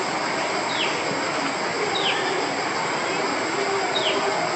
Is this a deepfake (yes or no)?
no